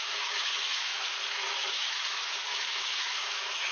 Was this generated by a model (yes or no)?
yes